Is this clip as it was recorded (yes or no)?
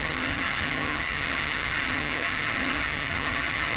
no